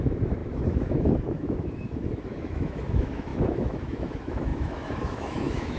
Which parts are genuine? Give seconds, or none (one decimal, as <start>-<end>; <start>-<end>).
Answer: none